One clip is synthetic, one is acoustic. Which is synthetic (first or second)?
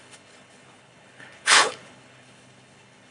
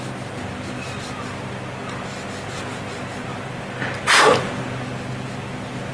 first